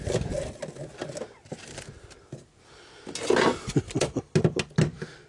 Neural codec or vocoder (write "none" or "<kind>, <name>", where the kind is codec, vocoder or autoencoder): none